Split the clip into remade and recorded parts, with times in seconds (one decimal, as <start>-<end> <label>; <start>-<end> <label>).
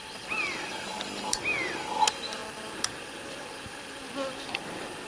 0.0-5.1 recorded